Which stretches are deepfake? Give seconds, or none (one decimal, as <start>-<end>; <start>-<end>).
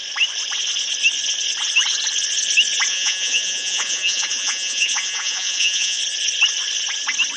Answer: 2.9-6.0